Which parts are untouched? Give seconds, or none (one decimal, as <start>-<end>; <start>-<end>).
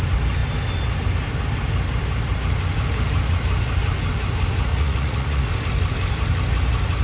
0.0-4.7; 5.5-7.0